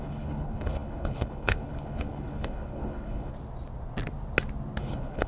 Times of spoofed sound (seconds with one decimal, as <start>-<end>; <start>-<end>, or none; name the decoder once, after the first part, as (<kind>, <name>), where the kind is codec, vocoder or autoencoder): 0.0-3.3 (codec, HILCodec); 4.8-5.3